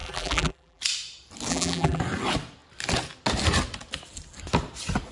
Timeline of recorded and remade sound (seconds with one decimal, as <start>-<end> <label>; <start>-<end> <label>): 0.0-0.8 remade; 0.8-1.5 recorded; 1.5-2.0 remade; 2.0-5.1 recorded